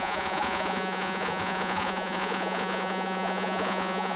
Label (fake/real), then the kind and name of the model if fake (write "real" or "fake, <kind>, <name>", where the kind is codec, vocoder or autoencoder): fake, vocoder, Vocos